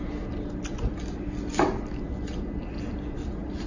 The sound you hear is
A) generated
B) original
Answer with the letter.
B